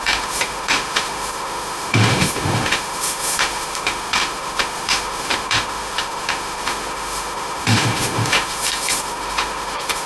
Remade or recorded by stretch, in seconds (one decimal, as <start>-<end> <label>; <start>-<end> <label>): 0.0-10.1 remade